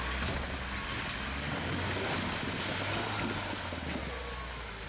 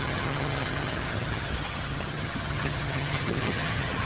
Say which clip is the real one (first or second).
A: first